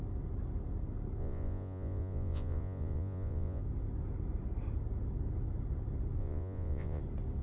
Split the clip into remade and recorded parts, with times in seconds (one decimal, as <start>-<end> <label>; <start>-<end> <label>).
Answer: 0.0-1.2 recorded; 1.2-3.6 remade; 3.6-6.2 recorded; 6.2-7.0 remade; 7.0-7.4 recorded